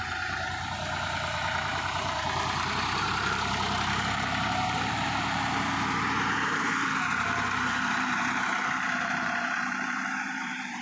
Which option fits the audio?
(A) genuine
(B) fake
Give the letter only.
B